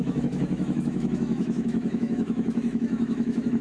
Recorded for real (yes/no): no